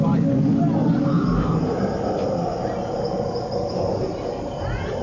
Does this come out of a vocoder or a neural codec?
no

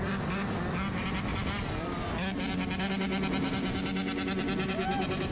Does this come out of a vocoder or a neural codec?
no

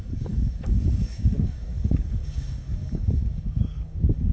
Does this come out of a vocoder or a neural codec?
yes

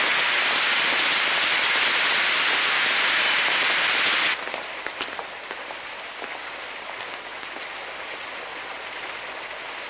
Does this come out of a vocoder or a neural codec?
no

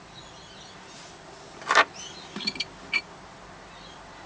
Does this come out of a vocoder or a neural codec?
no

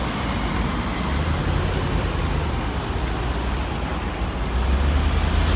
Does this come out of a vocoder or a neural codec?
no